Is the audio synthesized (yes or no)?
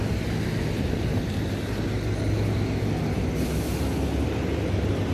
no